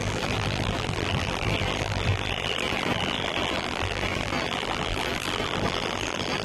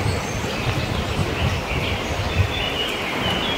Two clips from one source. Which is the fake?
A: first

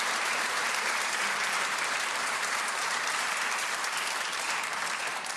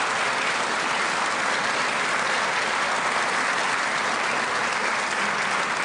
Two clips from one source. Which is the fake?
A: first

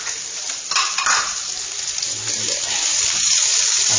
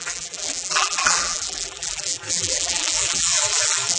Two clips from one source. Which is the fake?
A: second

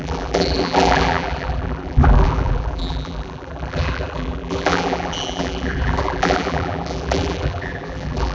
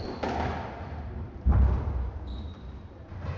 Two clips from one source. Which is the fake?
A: first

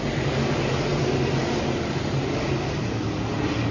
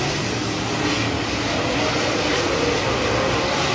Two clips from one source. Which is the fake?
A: first